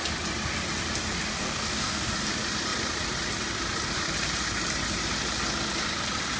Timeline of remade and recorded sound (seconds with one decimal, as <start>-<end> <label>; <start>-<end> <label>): 0.0-1.3 recorded; 1.3-2.1 remade; 2.1-6.4 recorded